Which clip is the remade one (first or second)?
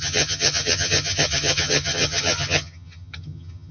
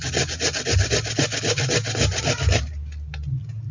first